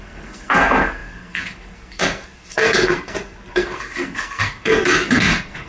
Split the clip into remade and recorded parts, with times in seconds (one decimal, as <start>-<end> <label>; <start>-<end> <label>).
0.0-5.7 remade